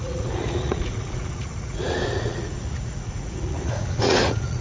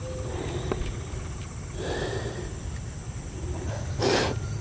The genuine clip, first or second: second